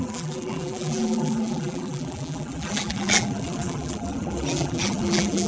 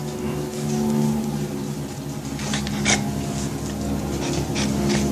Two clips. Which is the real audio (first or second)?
second